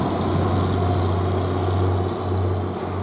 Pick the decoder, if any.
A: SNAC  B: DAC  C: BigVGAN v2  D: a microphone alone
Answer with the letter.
D